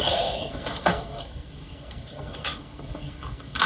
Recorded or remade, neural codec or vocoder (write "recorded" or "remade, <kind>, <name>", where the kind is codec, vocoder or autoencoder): remade, codec, SNAC